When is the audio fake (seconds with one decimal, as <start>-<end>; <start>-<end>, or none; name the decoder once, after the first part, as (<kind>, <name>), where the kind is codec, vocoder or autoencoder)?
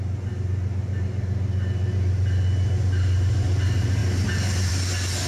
none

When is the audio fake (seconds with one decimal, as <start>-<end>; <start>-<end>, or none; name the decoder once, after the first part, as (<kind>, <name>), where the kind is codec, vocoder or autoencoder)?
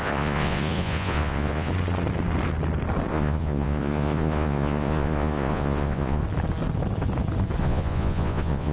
0.0-1.7 (vocoder, Vocos); 3.1-6.2; 7.6-8.7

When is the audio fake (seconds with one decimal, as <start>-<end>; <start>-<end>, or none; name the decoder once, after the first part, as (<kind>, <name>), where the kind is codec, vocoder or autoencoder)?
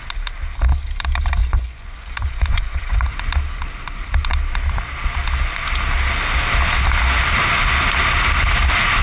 1.4-3.1 (vocoder, Vocos)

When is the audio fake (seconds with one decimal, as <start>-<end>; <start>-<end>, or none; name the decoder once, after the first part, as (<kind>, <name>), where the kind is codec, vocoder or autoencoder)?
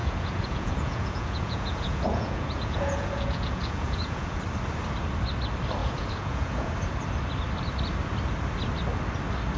0.0-4.4 (vocoder, Vocos); 5.8-6.7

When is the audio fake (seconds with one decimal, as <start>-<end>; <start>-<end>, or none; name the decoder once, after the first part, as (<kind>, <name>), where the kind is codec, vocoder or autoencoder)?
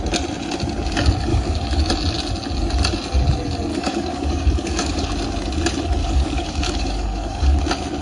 1.3-1.9 (codec, DAC); 3.7-5.1; 6.0-7.6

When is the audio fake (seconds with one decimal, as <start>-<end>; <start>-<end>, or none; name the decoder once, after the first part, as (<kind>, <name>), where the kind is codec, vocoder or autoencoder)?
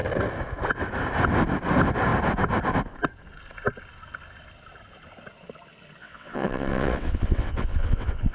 6.0-8.3 (vocoder, WaveNeXt)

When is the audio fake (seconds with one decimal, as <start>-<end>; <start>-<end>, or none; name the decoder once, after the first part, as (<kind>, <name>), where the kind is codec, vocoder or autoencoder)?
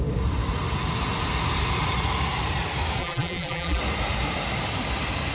3.0-3.8 (vocoder, BigVGAN v2)